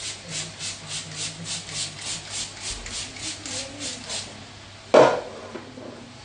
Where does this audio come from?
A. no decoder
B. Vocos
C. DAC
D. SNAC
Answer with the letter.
A